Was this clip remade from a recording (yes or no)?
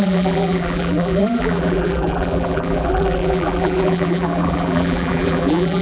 yes